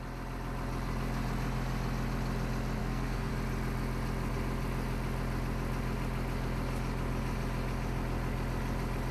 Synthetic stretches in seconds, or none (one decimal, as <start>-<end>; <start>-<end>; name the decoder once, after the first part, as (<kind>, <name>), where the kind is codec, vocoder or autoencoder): 2.8-3.3 (codec, SNAC)